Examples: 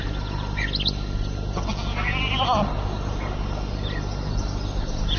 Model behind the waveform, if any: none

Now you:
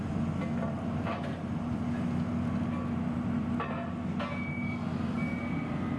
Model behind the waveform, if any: none